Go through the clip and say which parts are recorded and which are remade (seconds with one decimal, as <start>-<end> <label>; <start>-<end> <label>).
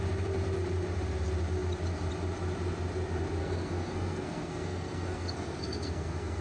0.0-3.4 recorded; 3.4-6.4 remade